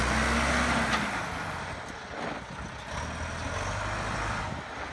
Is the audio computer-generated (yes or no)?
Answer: no